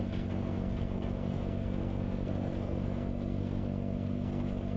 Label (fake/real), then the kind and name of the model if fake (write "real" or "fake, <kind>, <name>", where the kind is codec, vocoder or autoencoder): fake, codec, SNAC